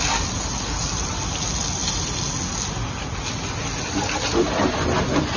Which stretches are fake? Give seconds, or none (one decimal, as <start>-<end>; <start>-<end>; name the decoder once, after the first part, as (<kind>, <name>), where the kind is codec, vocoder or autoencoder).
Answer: none